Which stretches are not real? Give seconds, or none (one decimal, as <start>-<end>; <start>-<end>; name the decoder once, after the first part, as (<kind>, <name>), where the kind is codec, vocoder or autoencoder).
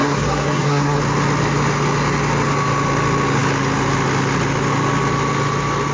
0.0-1.0 (codec, SNAC)